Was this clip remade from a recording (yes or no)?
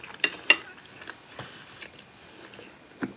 no